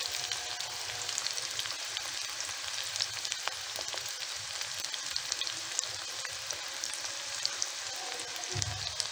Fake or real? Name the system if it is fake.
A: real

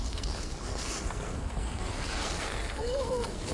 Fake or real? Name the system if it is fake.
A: fake, codec, SNAC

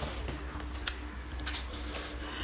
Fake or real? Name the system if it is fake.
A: real